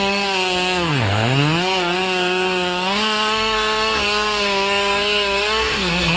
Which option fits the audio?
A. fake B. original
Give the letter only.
A